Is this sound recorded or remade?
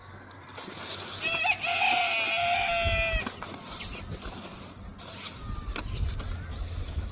recorded